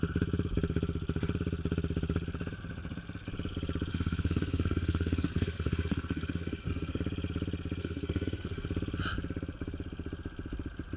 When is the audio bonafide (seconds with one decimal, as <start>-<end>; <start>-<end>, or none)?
0.0-3.9; 7.0-7.8; 8.7-11.0

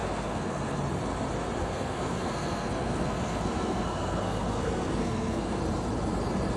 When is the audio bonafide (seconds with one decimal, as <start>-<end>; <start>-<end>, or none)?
0.8-1.6; 5.6-6.6